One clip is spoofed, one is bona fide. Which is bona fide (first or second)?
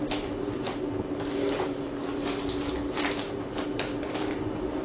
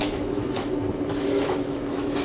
first